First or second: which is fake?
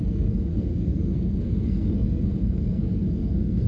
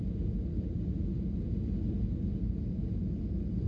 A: first